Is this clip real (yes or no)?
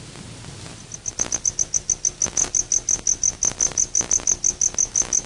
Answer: yes